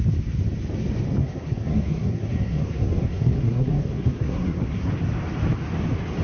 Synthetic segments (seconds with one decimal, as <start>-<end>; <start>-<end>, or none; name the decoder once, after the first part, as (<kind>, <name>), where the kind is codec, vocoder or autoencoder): 1.2-4.9 (codec, SNAC)